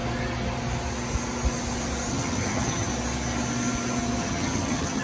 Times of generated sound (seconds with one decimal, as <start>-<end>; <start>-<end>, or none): 2.1-2.9; 4.2-5.0